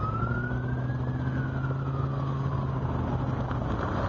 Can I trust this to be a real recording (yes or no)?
yes